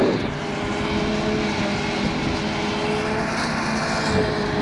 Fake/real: real